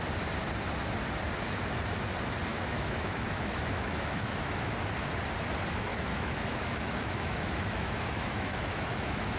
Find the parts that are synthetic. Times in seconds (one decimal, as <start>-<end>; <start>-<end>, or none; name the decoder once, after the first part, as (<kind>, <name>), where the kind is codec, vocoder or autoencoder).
2.5-4.7 (autoencoder, DAC-VAE); 5.9-9.4